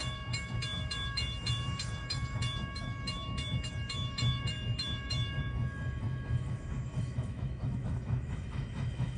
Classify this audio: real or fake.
fake